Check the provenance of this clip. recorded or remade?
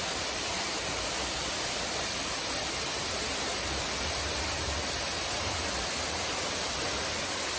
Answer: remade